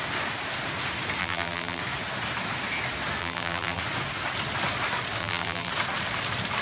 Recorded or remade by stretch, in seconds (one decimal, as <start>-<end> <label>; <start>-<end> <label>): 0.0-1.2 recorded; 1.2-1.8 remade; 1.8-3.2 recorded; 3.2-3.8 remade; 3.8-5.2 recorded; 5.2-5.7 remade; 5.7-6.6 recorded